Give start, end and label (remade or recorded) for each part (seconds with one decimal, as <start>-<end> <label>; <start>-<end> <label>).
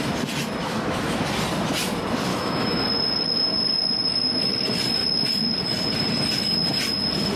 0.0-0.6 recorded; 0.6-1.2 remade; 1.2-2.3 recorded; 2.3-2.8 remade; 2.8-7.4 recorded